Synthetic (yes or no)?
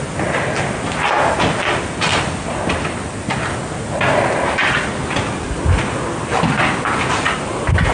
no